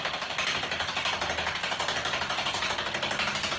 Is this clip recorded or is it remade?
recorded